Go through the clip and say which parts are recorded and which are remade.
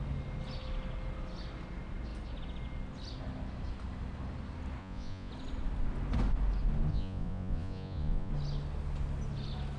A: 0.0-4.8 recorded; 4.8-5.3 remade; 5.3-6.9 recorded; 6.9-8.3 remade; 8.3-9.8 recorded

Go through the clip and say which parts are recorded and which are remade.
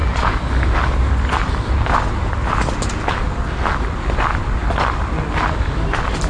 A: 0.0-4.6 recorded; 4.6-6.3 remade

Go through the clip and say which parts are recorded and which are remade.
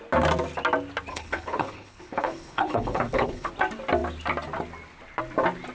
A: 0.0-1.1 recorded; 1.1-3.5 remade; 3.5-5.7 recorded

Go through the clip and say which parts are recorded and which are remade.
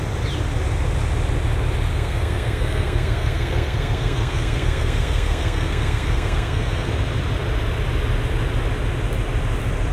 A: 0.0-1.9 recorded; 1.9-6.9 remade; 6.9-9.9 recorded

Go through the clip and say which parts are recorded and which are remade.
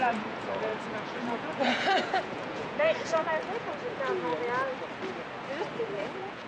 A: 0.0-4.3 remade; 4.3-5.8 recorded; 5.8-6.5 remade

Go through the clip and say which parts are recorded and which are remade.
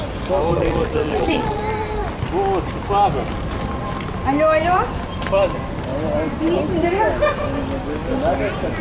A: 0.0-0.5 recorded; 0.5-1.6 remade; 1.6-8.8 recorded